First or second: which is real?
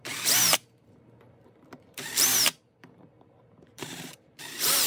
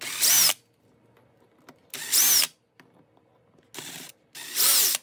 second